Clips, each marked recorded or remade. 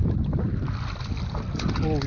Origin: recorded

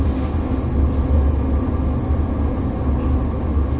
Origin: recorded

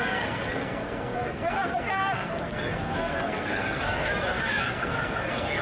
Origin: remade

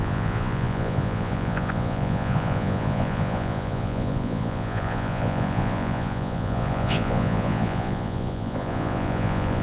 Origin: remade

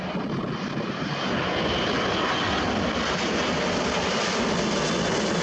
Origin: recorded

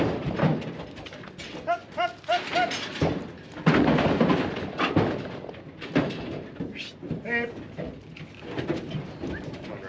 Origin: recorded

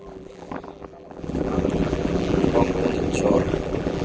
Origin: remade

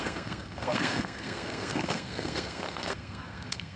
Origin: remade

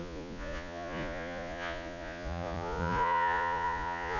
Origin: remade